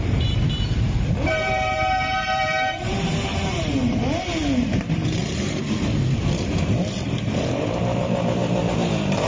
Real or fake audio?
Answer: fake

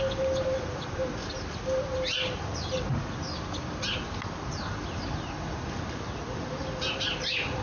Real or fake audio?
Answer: real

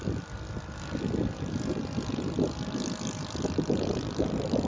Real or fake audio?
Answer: real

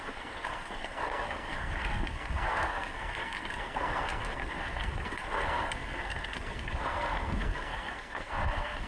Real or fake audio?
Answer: fake